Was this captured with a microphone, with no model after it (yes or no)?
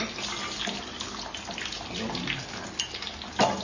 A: yes